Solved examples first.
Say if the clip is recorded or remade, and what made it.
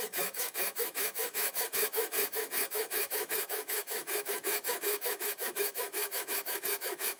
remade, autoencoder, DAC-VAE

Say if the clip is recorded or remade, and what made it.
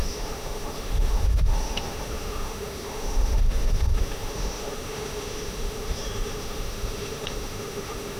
remade, autoencoder, DAC-VAE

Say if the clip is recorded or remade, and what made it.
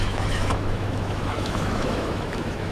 remade, autoencoder, DAC-VAE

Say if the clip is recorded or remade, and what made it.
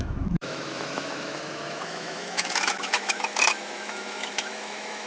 remade, autoencoder, DAC-VAE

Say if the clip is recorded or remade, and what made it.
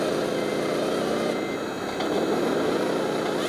recorded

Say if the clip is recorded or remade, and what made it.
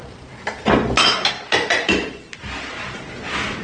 recorded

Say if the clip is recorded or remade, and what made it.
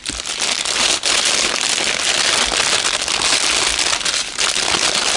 recorded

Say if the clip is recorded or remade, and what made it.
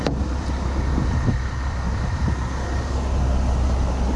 recorded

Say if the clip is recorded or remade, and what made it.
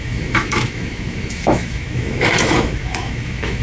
remade, autoencoder, DAC-VAE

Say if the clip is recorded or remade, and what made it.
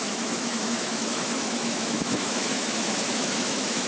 remade, autoencoder, DAC-VAE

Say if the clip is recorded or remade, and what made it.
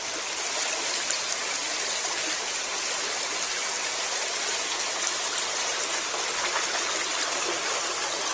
recorded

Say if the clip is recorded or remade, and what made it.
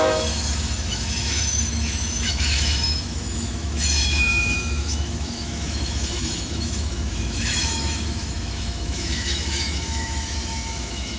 remade, autoencoder, DAC-VAE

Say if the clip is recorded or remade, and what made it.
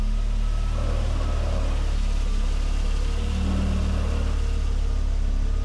recorded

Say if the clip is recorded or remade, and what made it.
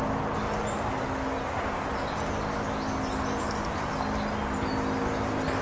recorded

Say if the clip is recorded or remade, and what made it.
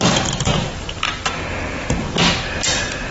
recorded